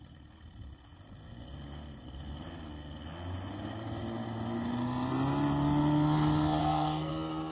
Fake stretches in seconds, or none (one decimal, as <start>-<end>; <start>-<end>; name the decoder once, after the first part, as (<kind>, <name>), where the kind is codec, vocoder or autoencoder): 6.6-7.1 (codec, SNAC)